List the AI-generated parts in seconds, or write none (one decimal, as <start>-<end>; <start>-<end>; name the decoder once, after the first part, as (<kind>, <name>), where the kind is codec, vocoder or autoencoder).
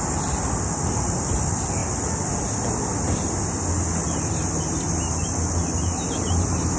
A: none